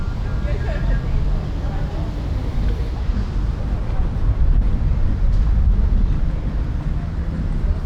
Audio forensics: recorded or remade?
recorded